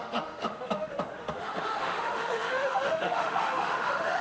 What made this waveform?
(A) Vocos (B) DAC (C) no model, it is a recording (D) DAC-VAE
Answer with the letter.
D